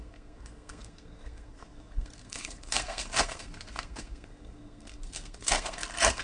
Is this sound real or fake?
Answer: fake